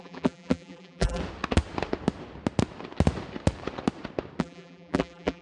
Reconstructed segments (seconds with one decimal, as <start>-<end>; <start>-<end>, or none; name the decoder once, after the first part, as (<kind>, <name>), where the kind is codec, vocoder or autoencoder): 0.0-1.2 (vocoder, BigVGAN v2); 4.4-5.4